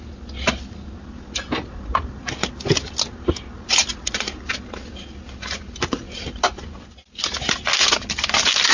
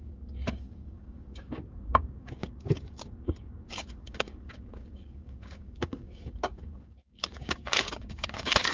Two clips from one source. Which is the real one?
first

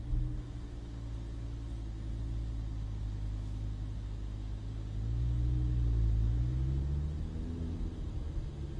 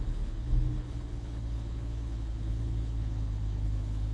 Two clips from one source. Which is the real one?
first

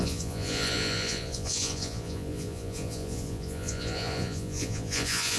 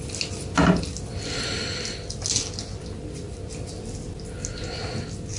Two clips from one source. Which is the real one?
second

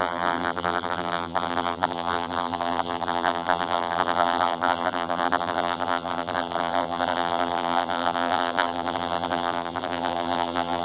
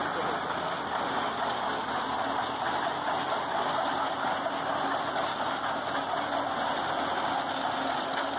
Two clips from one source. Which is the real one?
second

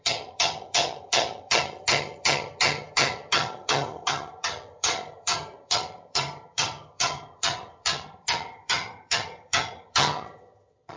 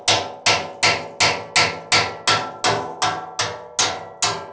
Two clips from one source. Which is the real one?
second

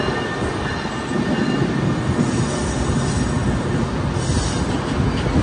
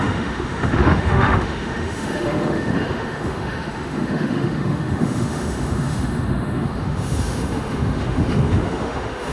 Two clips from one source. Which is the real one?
first